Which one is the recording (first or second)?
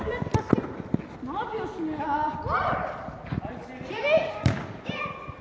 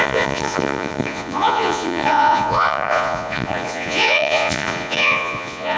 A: first